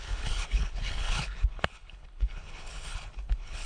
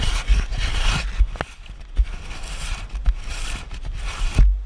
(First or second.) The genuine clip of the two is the second